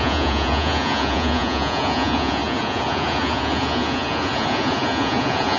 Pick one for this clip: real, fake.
fake